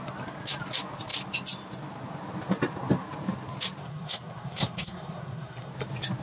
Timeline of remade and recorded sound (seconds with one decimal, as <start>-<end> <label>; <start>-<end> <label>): 0.0-3.8 recorded; 3.8-5.7 remade; 5.7-6.2 recorded